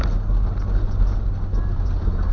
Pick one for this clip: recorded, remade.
recorded